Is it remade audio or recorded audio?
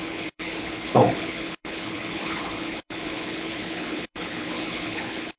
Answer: remade